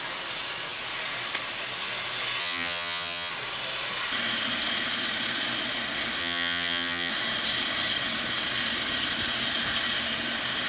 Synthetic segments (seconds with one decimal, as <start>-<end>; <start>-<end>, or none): 2.4-3.3; 6.2-7.1

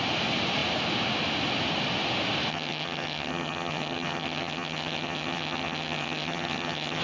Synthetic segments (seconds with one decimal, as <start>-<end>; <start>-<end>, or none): 2.5-7.0

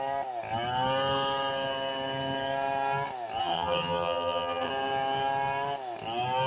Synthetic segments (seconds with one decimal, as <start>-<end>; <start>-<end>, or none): 3.4-4.7

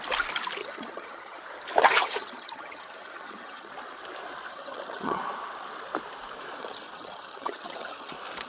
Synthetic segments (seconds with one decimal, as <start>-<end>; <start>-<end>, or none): 0.6-1.4; 1.8-3.7; 4.5-5.2; 6.6-8.1

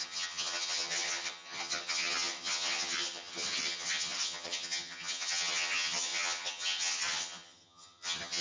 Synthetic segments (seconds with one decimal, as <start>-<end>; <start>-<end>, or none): 0.0-8.4

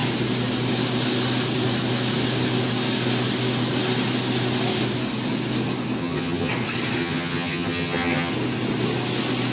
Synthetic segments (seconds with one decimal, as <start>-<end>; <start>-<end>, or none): 6.0-6.5; 7.0-8.3